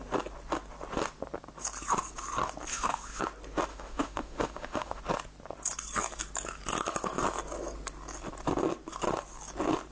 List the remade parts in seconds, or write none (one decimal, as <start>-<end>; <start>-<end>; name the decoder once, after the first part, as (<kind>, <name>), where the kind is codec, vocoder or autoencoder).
2.7-3.2 (autoencoder, DAC-VAE); 3.7-5.0